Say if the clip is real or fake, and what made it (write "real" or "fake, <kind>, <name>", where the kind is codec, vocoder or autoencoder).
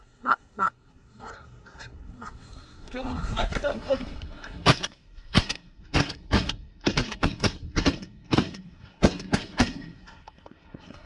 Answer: fake, codec, SNAC